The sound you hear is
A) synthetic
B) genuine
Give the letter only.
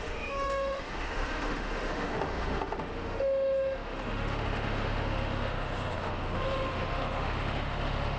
A